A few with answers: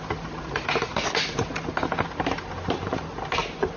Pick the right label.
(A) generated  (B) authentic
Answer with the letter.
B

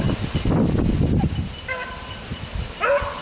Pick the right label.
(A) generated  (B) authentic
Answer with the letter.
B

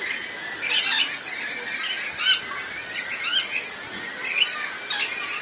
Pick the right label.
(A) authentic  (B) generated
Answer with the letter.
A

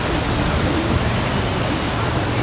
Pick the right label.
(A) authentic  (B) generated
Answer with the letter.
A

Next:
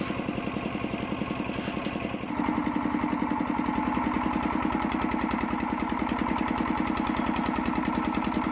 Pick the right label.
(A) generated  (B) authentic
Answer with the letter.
B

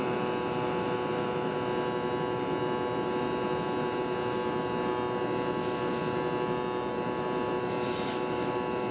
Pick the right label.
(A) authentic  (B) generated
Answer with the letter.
A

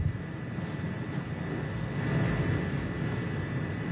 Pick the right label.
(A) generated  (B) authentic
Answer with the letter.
B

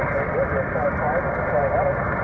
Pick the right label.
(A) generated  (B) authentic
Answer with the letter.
B